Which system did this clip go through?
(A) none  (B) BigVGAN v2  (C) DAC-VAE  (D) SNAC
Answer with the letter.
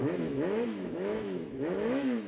C